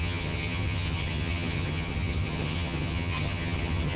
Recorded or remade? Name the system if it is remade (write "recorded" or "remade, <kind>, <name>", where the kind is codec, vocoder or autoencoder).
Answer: remade, vocoder, HiFi-GAN